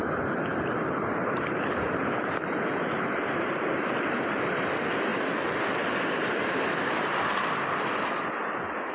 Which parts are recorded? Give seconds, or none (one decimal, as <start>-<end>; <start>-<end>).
0.0-0.5; 4.3-8.9